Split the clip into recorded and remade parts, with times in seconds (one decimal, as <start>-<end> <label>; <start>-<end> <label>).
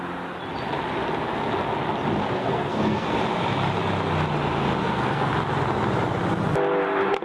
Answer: 0.0-2.2 recorded; 2.2-3.2 remade; 3.2-4.8 recorded; 4.8-5.3 remade; 5.3-7.2 recorded